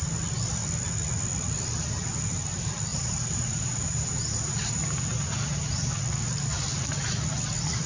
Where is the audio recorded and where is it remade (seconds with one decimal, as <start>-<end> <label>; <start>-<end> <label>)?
0.0-2.9 recorded; 2.9-5.9 remade; 5.9-7.9 recorded